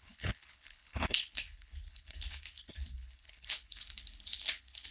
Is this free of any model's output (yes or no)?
no